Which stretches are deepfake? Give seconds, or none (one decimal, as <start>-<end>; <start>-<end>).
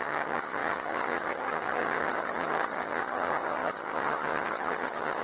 0.0-5.2